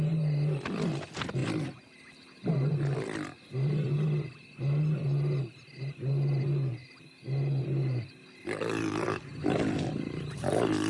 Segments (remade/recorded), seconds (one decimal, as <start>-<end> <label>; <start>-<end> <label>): 0.0-10.9 recorded